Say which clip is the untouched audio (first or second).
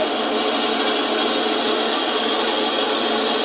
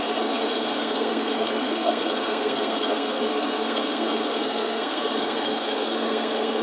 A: first